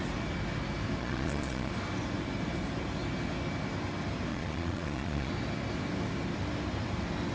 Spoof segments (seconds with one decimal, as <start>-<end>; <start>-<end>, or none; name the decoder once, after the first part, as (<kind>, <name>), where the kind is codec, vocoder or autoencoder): 1.0-1.7 (vocoder, Vocos); 4.3-5.3